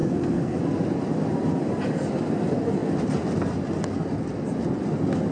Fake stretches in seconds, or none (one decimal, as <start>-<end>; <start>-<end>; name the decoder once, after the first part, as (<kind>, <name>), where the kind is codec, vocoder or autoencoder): 0.0-0.6 (codec, SNAC)